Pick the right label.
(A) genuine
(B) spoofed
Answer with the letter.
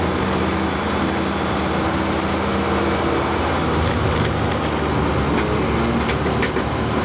A